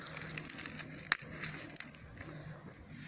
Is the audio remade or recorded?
recorded